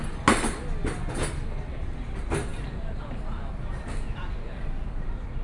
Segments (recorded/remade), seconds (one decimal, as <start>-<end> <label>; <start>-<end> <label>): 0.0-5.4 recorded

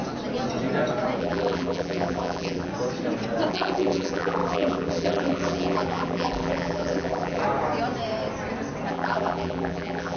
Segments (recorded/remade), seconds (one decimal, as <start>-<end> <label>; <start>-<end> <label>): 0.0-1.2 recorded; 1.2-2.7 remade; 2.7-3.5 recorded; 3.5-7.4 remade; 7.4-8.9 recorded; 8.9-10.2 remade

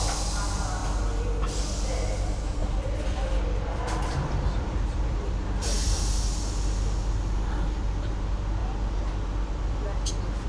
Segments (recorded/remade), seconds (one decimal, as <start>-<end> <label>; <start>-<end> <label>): 0.0-2.6 recorded; 2.6-6.0 remade; 6.0-10.5 recorded

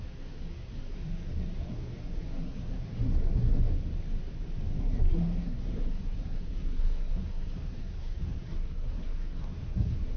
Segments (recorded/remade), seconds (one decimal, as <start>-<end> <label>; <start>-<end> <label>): 0.0-3.7 remade; 3.7-4.8 recorded; 4.8-10.2 remade

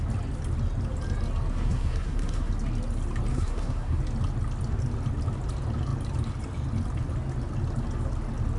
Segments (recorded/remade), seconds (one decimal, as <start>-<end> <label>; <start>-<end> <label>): 0.0-1.5 recorded; 1.5-2.5 remade; 2.5-3.3 recorded; 3.3-4.0 remade; 4.0-8.6 recorded

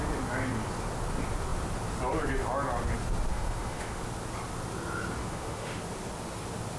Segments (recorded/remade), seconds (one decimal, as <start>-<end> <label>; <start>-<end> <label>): 0.0-3.3 recorded; 3.3-4.0 remade; 4.0-5.2 recorded; 5.2-5.8 remade; 5.8-6.8 recorded

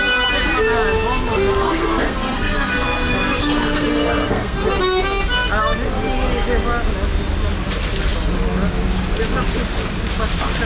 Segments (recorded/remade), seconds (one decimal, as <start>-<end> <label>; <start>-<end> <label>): 0.0-1.5 recorded; 1.5-4.7 remade; 4.7-10.7 recorded